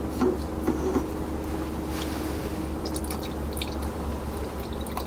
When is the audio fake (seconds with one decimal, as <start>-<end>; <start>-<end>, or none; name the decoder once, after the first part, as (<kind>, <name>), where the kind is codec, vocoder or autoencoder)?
none